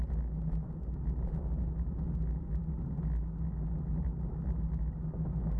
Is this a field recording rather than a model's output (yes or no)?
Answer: yes